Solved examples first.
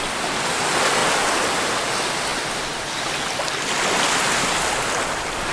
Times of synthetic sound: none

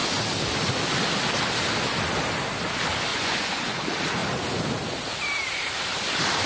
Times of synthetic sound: 3.1-3.8

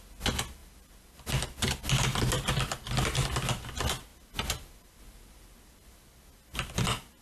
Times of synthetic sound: none

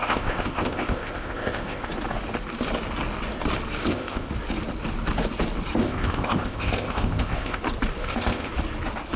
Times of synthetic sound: 0.0-1.9; 3.8-4.3; 5.8-7.6; 8.0-8.5

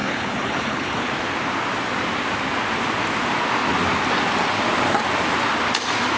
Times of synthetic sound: 0.0-1.1

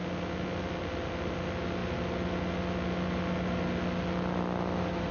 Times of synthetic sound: none

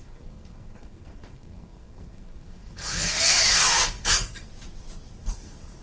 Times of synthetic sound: 0.0-4.5; 5.2-5.8

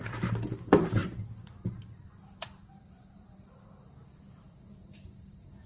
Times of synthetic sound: 0.0-5.7